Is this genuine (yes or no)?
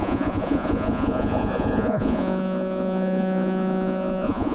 no